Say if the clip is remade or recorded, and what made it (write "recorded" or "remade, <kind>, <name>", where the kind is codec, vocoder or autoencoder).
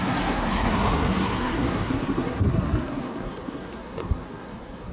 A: remade, codec, SNAC